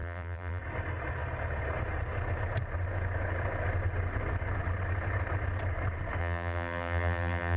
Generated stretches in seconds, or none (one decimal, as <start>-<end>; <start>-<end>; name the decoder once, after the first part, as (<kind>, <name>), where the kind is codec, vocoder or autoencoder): 0.0-0.6 (vocoder, BigVGAN v2); 6.2-7.6